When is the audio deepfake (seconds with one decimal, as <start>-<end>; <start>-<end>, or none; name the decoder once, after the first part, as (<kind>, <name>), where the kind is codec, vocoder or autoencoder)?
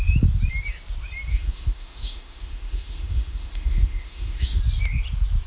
1.3-4.6 (autoencoder, DAC-VAE)